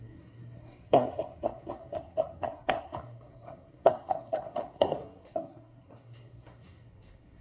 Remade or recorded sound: remade